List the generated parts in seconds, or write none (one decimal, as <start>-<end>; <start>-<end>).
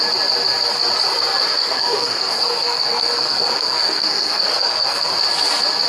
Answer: 1.6-5.1